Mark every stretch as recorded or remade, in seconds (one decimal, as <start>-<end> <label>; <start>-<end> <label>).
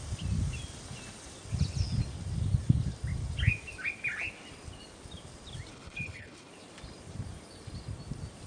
0.0-5.7 recorded; 5.7-6.5 remade; 6.5-8.5 recorded